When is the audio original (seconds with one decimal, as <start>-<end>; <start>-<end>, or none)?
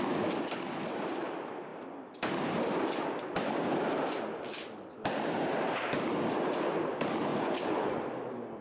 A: 0.0-7.3; 8.0-8.6